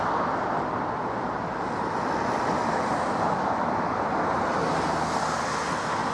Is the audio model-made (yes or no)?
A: no